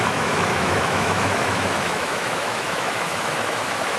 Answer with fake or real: fake